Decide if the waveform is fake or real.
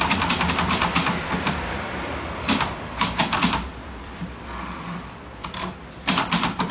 fake